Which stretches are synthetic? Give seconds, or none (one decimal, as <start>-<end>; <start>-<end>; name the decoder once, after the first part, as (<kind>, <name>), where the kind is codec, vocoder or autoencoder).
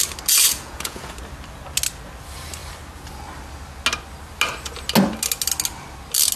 0.5-1.1 (vocoder, Vocos)